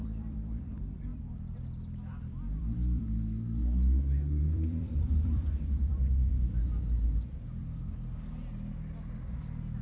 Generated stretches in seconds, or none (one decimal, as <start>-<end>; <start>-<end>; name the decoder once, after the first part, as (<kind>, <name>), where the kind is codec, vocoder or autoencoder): 0.0-3.6 (vocoder, BigVGAN v2); 4.4-6.3